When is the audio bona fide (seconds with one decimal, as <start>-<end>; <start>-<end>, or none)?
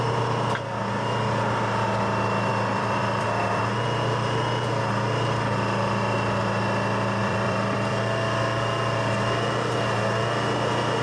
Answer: 0.0-2.5; 3.6-7.2; 8.0-11.0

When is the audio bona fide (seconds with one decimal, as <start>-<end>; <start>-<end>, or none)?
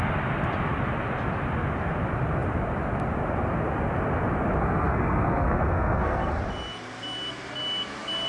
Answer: 0.0-4.6; 6.4-8.3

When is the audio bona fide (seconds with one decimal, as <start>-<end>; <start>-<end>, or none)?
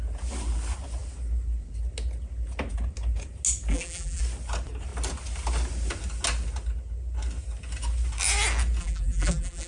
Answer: 0.0-3.7; 4.2-8.8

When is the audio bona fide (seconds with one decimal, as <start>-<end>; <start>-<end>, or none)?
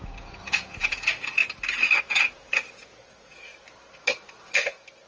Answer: 1.4-2.0; 3.5-5.1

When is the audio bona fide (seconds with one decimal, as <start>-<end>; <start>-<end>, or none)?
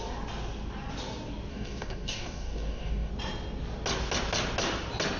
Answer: 0.0-1.5; 3.1-5.2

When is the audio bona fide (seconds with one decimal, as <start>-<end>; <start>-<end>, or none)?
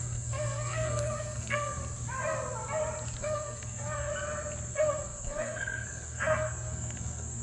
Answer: 1.8-3.2; 4.1-4.7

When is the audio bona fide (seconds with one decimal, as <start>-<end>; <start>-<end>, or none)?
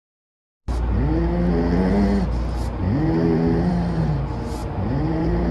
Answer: 0.0-2.8; 3.7-4.6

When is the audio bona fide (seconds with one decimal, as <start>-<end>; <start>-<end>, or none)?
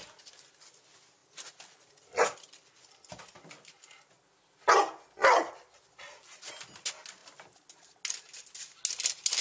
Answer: 0.0-9.4